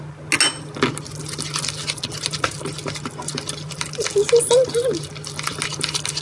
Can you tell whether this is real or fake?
real